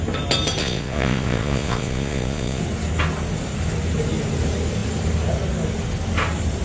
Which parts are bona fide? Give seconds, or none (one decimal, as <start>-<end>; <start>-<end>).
0.0-0.6; 2.6-6.6